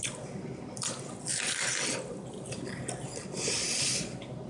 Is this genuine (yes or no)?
yes